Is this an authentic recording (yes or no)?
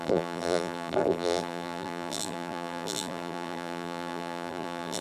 no